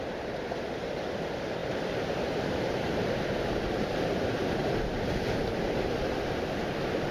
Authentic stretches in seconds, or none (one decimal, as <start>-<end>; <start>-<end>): 0.0-1.6; 5.9-7.1